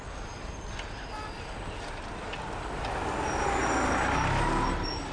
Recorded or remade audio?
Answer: recorded